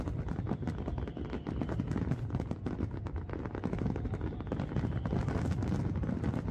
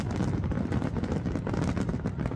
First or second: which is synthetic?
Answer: second